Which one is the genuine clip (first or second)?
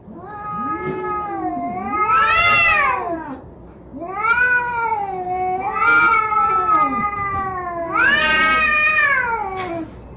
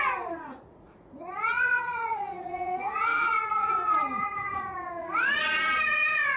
first